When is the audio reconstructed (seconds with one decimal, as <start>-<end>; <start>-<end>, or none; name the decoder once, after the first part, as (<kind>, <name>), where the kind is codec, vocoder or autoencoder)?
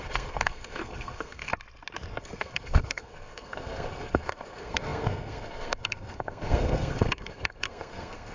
0.0-1.5 (codec, SNAC); 2.2-8.3